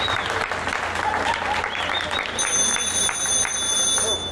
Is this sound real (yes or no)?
yes